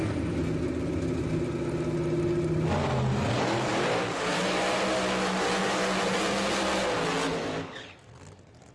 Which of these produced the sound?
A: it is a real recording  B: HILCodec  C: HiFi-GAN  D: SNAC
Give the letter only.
A